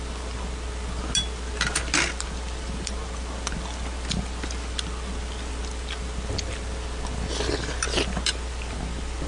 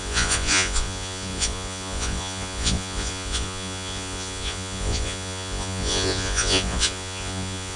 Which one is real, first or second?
first